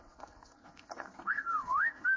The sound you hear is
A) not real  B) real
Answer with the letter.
A